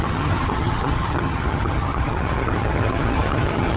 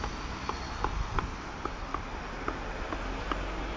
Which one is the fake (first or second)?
first